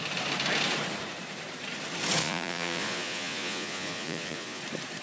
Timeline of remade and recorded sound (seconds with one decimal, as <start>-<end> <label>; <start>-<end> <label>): 0.0-2.2 recorded; 2.2-4.6 remade; 4.6-5.0 recorded